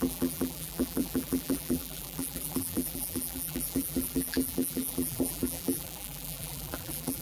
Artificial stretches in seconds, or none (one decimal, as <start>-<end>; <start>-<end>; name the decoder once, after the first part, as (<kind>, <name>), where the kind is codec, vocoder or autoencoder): 0.0-7.2 (vocoder, BigVGAN v2)